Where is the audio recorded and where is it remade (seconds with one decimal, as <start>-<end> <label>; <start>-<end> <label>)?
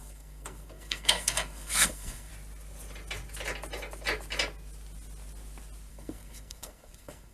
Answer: 0.0-2.3 remade; 2.3-5.9 recorded; 5.9-7.3 remade